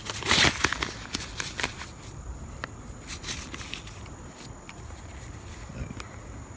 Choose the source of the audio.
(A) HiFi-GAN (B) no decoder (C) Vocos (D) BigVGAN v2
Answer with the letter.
B